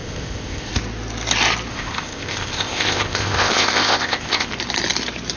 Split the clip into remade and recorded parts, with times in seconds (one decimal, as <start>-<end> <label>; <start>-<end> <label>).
0.0-0.7 remade; 0.7-1.7 recorded; 1.7-4.5 remade; 4.5-5.4 recorded